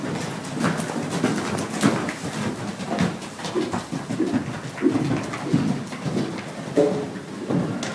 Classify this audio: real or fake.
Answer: real